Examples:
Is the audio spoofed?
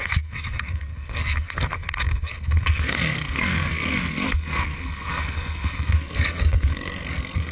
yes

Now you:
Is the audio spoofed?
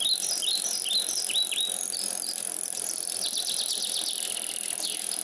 no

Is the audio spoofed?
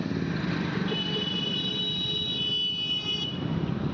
no